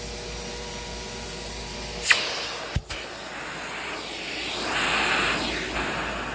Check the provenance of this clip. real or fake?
real